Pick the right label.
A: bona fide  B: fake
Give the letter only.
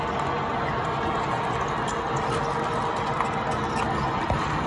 A